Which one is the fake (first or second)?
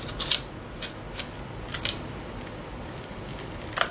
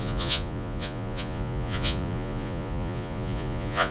second